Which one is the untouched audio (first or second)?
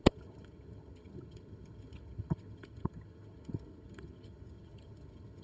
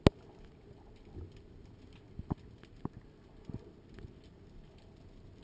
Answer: second